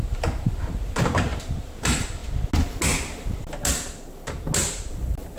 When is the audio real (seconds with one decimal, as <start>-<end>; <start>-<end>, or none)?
2.2-4.9